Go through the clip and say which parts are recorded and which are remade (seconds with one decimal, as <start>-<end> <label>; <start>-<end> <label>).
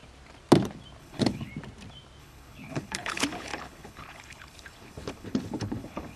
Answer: 0.0-1.0 recorded; 1.0-1.5 remade; 1.5-2.2 recorded; 2.2-6.2 remade